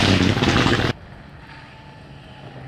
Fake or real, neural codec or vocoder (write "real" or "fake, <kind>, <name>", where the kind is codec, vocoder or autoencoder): real